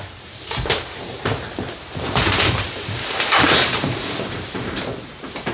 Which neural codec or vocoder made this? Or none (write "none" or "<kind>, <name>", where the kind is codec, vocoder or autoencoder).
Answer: vocoder, BigVGAN v2